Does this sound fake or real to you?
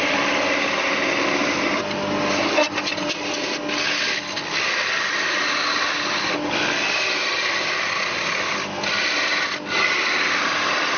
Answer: real